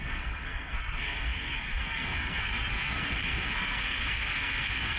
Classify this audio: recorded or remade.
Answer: remade